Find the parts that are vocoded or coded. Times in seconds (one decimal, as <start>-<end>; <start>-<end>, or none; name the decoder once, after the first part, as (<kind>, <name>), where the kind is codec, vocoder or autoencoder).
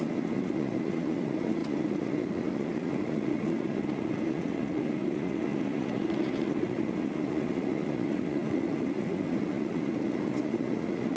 0.0-11.2 (vocoder, Vocos)